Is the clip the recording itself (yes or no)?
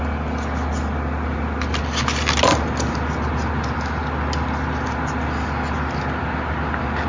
yes